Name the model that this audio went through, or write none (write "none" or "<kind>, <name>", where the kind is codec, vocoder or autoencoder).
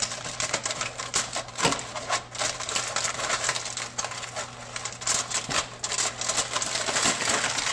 none